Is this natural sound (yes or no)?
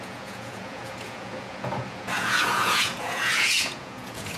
no